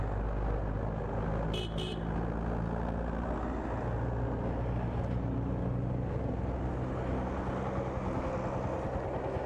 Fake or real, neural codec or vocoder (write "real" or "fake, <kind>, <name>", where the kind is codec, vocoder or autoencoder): real